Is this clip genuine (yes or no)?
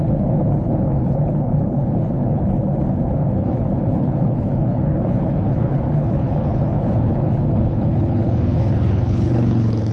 no